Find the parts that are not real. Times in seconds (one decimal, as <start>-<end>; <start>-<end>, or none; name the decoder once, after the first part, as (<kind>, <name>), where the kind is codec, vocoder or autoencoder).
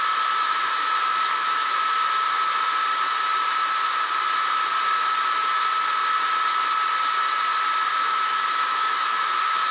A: 0.7-1.7 (autoencoder, DAC-VAE); 7.9-9.7